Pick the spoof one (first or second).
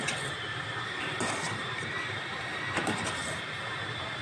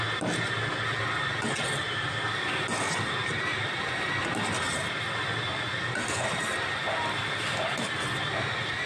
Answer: first